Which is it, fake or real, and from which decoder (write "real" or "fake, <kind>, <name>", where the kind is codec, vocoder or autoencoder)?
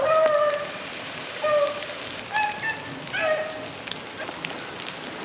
real